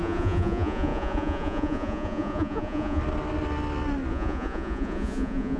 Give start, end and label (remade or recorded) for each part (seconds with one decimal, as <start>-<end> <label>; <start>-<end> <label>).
0.0-3.0 remade; 3.0-4.1 recorded; 4.1-5.6 remade